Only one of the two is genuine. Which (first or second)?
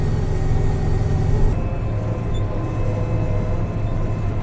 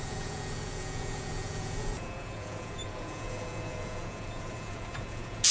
first